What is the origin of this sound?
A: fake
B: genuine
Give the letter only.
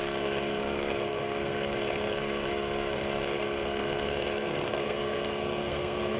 A